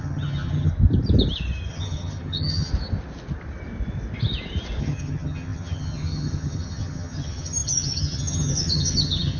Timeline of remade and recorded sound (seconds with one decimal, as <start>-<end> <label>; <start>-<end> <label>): 0.0-0.7 remade; 0.7-1.7 recorded; 1.7-2.7 remade; 2.7-4.8 recorded; 4.8-9.4 remade